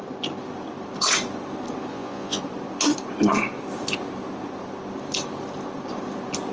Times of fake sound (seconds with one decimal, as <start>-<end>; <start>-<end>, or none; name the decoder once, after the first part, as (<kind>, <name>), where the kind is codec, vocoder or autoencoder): 1.9-2.4 (vocoder, Vocos)